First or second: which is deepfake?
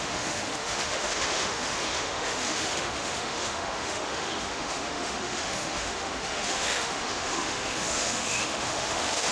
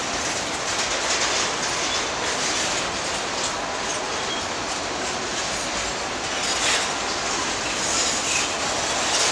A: first